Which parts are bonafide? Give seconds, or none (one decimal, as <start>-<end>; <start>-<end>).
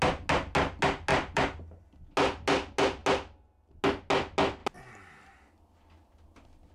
0.0-1.1; 1.6-6.7